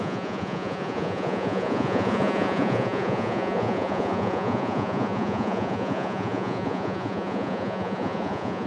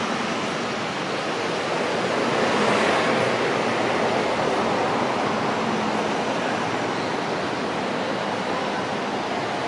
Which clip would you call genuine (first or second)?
second